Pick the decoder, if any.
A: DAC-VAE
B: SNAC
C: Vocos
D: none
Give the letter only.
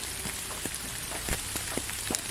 D